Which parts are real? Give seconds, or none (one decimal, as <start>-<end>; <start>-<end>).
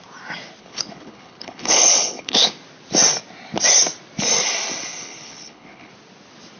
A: 0.0-0.6; 2.5-4.9; 5.9-6.6